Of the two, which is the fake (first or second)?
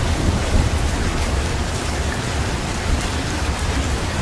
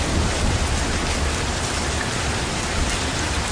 first